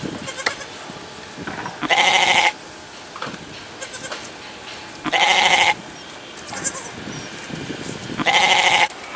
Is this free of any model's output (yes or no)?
yes